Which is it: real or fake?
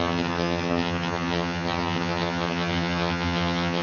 fake